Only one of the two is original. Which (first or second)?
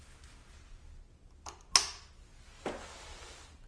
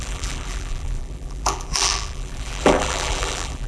first